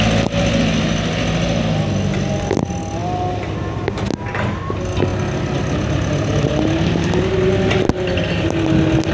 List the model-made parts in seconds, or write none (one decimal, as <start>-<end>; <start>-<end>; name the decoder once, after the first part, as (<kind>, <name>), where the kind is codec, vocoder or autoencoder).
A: none

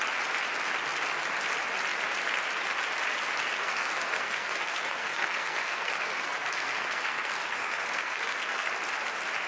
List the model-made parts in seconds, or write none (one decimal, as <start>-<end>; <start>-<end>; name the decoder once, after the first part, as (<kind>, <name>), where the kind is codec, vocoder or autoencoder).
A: 3.4-8.7 (codec, SNAC)

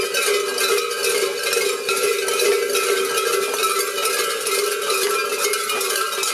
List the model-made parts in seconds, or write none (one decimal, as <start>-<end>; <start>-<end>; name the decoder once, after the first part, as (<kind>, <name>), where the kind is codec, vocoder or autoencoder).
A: none

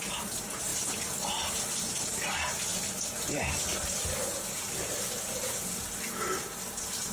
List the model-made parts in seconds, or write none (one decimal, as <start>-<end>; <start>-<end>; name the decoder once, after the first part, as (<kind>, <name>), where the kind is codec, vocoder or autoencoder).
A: none

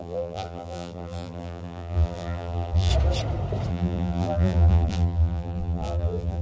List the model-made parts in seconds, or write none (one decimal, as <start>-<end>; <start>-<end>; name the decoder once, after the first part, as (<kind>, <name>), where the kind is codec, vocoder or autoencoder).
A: 0.0-2.9 (vocoder, BigVGAN v2); 3.7-6.4